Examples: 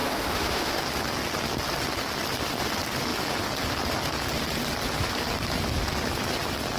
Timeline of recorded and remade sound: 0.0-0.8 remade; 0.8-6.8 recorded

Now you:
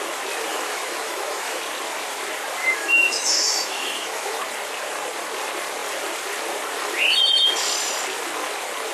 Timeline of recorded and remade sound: 0.0-0.5 recorded; 0.5-1.6 remade; 1.6-2.6 recorded; 2.6-4.4 remade; 4.4-8.9 recorded

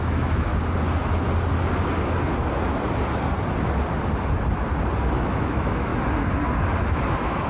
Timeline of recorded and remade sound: 0.0-0.5 remade; 0.5-5.0 recorded; 5.0-5.9 remade; 5.9-6.8 recorded; 6.8-7.5 remade

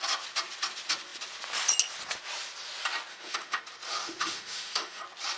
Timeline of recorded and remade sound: 0.0-3.1 recorded; 3.1-3.6 remade; 3.6-4.0 recorded; 4.0-5.0 remade; 5.0-5.4 recorded

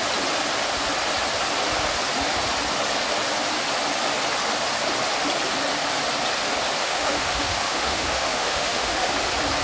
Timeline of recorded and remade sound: 0.0-6.8 recorded; 6.8-9.1 remade; 9.1-9.6 recorded

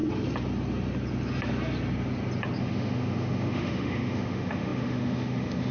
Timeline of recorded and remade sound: 0.0-2.6 recorded; 2.6-5.7 remade

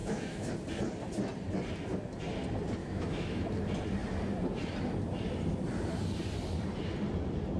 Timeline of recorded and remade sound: 0.0-0.5 remade; 0.5-2.8 recorded; 2.8-3.5 remade; 3.5-7.6 recorded

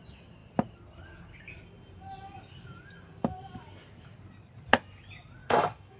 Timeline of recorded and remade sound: 0.0-5.4 recorded; 5.4-6.0 remade